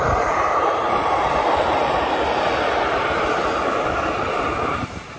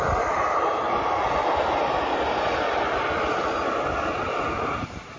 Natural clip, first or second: second